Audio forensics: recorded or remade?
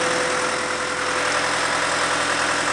recorded